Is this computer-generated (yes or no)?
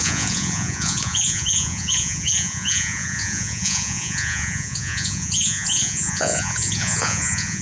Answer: yes